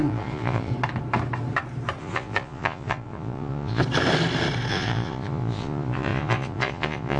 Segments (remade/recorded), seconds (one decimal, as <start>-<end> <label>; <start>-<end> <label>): 0.0-0.7 remade; 0.7-2.0 recorded; 2.0-3.8 remade; 3.8-4.7 recorded; 4.7-7.2 remade